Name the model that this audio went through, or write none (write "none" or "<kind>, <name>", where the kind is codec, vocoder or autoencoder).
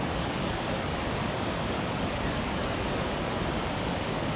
codec, DAC